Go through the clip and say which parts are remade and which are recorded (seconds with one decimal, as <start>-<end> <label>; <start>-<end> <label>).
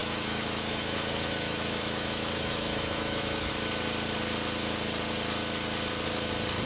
0.0-3.5 remade; 3.5-6.7 recorded